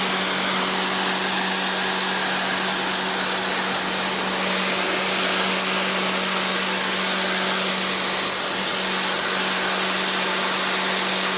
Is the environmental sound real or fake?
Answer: real